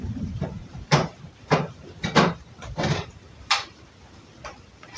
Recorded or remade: remade